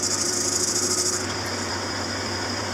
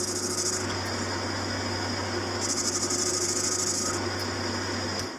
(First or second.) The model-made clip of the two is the first